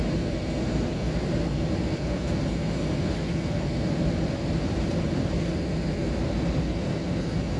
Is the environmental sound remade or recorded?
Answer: recorded